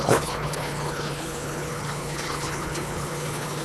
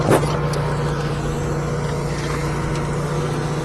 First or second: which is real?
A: second